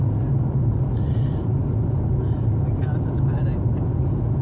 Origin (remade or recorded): recorded